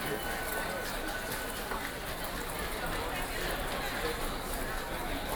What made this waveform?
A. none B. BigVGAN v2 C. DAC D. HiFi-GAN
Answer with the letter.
A